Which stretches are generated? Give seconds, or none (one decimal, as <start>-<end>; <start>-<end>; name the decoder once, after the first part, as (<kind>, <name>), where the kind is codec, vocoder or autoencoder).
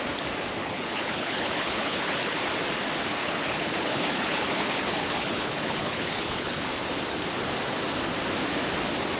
0.6-2.4 (codec, HILCodec); 3.2-6.7